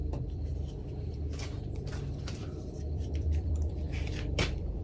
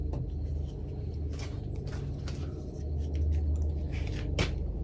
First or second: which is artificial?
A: first